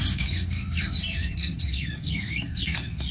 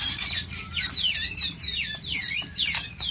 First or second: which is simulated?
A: first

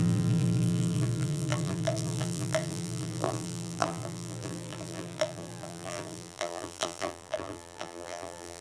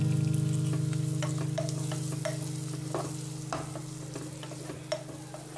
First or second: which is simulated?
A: first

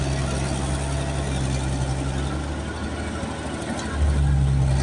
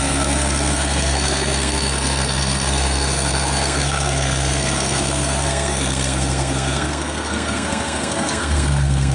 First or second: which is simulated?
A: second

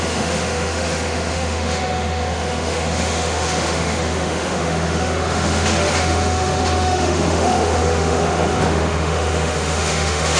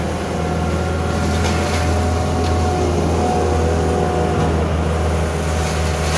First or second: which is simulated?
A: first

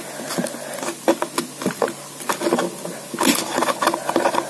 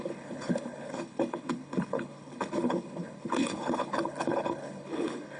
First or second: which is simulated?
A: second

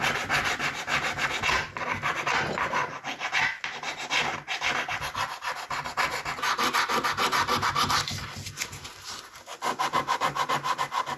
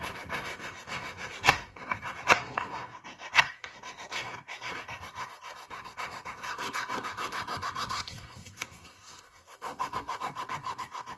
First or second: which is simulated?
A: second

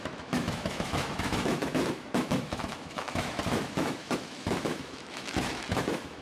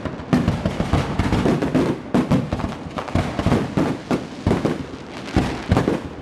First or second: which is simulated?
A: first